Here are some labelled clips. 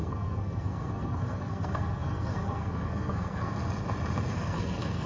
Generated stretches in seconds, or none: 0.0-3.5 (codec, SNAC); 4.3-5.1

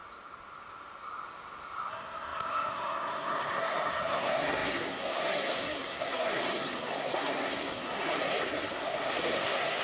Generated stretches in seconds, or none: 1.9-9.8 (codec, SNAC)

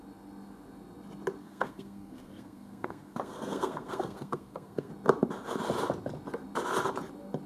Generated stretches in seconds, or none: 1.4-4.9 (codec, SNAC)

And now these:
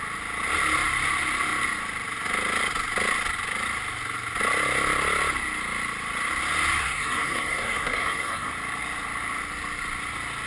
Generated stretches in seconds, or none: 6.8-8.5 (codec, SNAC)

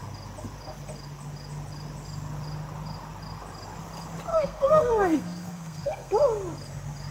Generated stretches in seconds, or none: 4.3-6.1 (codec, SNAC)

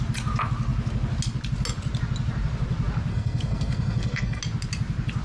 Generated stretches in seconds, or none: 3.1-4.4 (codec, SNAC)

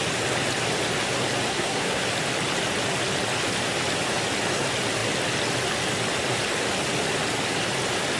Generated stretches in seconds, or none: 1.5-2.0 (codec, SNAC)

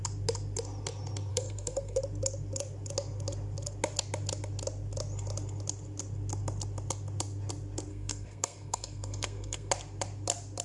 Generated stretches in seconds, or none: 1.3-2.0 (codec, SNAC); 7.9-9.7